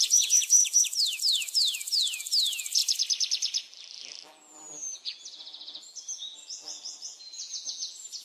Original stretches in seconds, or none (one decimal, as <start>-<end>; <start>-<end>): 2.8-3.6